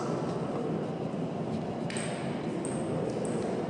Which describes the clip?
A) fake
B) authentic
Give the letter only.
B